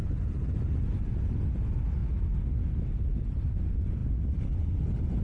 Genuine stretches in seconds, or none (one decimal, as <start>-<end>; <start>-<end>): 0.0-5.2